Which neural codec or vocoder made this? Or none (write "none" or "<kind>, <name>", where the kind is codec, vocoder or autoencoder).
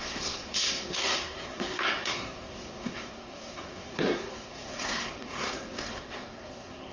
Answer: codec, SNAC